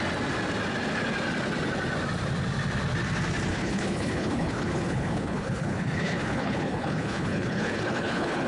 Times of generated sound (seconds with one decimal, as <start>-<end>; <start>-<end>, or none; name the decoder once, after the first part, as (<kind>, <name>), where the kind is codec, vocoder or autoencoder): 3.5-8.5 (codec, HILCodec)

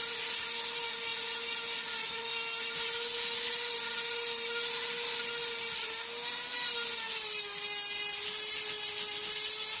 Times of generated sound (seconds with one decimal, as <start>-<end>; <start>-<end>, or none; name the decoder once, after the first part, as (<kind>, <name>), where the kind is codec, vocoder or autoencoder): none

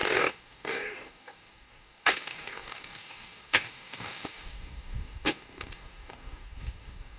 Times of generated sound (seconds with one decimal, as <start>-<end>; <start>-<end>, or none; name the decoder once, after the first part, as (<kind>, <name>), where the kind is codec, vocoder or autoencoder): 0.0-7.2 (codec, DAC)

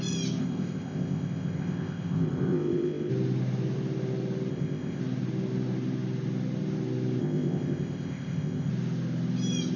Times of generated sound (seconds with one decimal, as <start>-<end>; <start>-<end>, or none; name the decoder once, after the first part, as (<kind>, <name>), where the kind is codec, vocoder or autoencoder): 0.4-3.1 (codec, ZipCodec); 4.5-5.0; 7.2-8.7

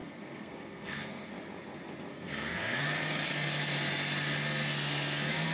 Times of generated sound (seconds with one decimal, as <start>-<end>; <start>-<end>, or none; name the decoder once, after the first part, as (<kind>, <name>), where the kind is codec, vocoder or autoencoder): 0.0-1.3 (codec, SNAC); 2.1-2.8

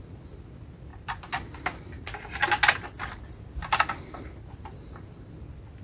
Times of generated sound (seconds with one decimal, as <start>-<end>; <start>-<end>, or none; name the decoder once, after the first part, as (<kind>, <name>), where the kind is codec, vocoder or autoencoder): none

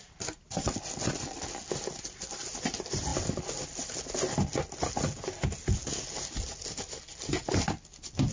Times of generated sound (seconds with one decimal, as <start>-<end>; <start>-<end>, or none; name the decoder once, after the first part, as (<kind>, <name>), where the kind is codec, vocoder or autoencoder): none

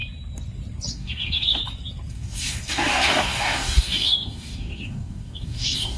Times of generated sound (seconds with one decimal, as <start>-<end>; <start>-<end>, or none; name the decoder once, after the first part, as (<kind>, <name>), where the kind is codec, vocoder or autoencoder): 0.9-1.6 (codec, DAC); 2.1-6.0